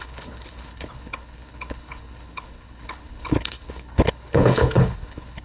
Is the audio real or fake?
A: fake